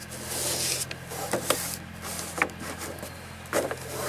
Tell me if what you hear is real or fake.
real